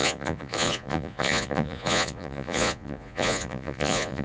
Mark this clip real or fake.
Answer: fake